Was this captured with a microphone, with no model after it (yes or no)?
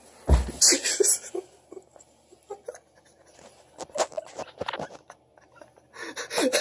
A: yes